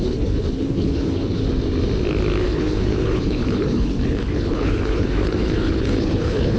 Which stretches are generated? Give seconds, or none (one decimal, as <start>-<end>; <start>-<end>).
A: 0.0-1.4; 2.4-6.6